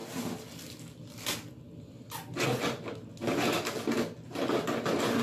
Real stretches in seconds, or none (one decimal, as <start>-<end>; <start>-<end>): 0.0-5.2